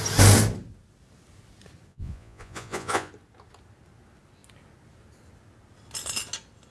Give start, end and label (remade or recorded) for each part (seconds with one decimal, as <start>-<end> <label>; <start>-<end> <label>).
0.0-1.9 recorded; 1.9-3.1 remade; 3.1-6.7 recorded